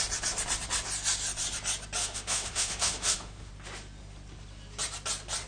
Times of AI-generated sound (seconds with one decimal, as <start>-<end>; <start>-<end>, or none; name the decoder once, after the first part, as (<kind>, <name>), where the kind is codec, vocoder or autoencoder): 2.0-3.5 (autoencoder, DAC-VAE)

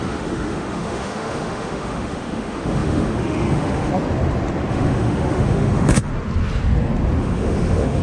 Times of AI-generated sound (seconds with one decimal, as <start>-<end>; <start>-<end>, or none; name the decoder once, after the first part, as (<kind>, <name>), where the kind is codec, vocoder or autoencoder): 0.0-3.9 (autoencoder, DAC-VAE); 4.7-6.1; 7.2-8.0